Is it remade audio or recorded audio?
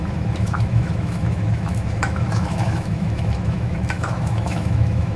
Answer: remade